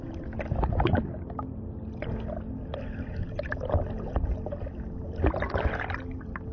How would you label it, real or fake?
real